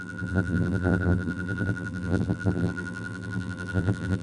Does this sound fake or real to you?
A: fake